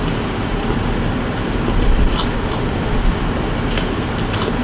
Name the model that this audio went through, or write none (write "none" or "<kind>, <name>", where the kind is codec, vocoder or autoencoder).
none